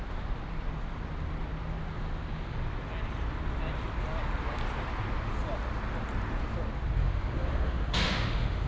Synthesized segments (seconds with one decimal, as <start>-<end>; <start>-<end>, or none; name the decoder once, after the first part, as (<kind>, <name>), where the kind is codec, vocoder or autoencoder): 7.0-8.7 (autoencoder, DAC-VAE)